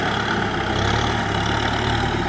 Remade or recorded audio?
recorded